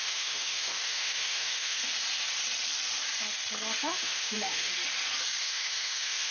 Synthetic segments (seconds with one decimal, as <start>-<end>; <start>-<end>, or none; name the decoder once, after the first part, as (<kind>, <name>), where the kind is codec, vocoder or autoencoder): 0.0-1.8 (autoencoder, DAC-VAE); 3.8-4.7; 5.4-6.3